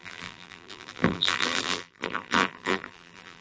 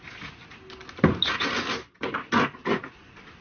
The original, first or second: second